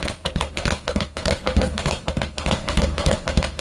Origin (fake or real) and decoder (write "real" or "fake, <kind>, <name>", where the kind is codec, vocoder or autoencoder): fake, codec, SNAC